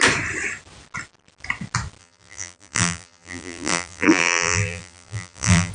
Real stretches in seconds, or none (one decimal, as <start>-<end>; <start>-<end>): 0.0-2.0